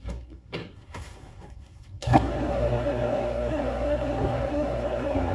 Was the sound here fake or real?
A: fake